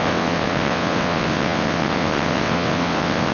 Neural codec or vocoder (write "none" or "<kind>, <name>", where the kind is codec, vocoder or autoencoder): vocoder, WaveNeXt